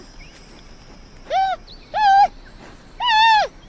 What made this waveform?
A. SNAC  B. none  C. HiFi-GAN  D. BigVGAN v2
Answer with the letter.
B